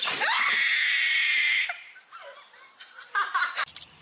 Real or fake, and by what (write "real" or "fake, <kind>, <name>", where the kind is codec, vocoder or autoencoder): fake, vocoder, BigVGAN v2